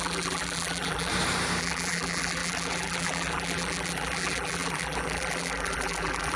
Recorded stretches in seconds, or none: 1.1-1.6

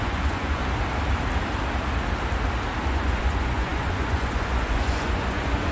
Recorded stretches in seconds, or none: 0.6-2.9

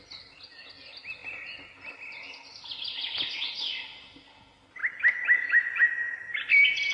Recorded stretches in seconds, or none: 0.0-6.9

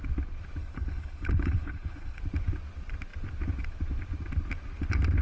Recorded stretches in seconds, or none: 0.0-0.6; 2.2-5.2

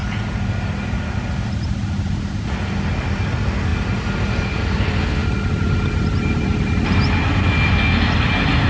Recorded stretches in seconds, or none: 0.0-8.7

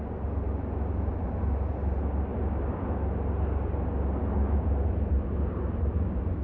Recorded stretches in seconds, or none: 0.0-6.4

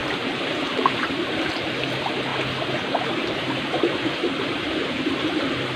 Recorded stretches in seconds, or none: 2.3-3.0

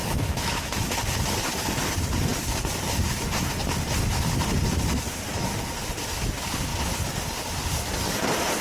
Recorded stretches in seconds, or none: 0.9-8.6